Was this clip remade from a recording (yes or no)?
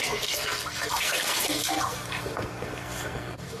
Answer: yes